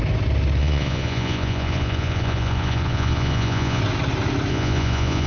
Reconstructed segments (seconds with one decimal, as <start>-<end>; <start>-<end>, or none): 0.6-3.8; 4.5-5.3